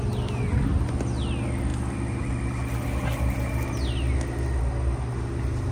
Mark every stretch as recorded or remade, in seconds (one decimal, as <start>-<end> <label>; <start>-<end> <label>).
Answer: 0.0-5.7 recorded